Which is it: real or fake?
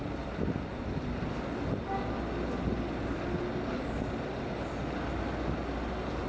real